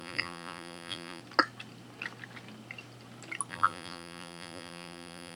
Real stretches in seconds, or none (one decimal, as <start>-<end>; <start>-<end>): 1.2-3.5